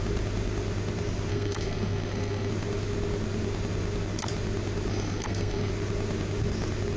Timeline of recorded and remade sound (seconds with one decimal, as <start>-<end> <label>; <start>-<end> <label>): 0.0-1.3 recorded; 1.3-2.5 remade; 2.5-4.9 recorded; 4.9-5.7 remade; 5.7-7.0 recorded